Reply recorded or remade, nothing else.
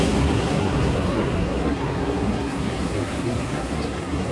remade